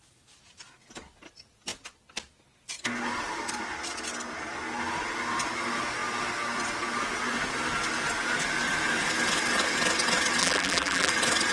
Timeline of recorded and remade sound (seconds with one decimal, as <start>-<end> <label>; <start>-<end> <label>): 0.0-10.4 recorded; 10.4-11.1 remade; 11.1-11.5 recorded